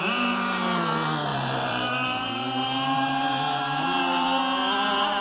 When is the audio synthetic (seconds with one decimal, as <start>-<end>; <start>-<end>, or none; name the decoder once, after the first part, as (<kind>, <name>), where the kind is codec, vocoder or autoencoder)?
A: 1.3-4.4 (vocoder, BigVGAN v2)